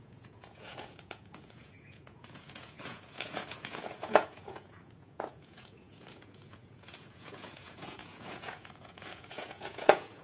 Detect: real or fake fake